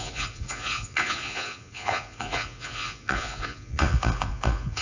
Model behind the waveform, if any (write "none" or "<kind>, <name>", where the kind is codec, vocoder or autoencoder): vocoder, Vocos